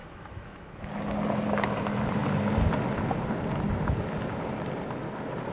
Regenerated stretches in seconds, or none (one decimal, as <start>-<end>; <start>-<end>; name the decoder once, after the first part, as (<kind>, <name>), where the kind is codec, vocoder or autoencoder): 0.0-0.9 (autoencoder, DAC-VAE)